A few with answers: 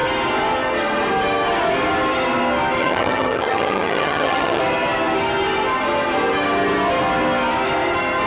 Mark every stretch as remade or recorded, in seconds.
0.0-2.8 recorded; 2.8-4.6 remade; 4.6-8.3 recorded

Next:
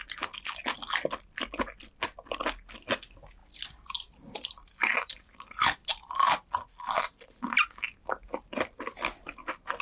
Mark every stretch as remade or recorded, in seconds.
0.0-9.8 recorded

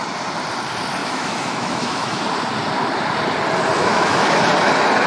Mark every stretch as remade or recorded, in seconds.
0.0-1.0 recorded; 1.0-2.2 remade; 2.2-3.8 recorded; 3.8-4.4 remade; 4.4-5.1 recorded